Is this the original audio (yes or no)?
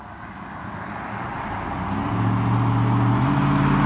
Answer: yes